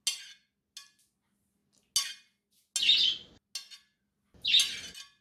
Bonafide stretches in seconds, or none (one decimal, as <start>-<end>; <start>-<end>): 0.0-5.2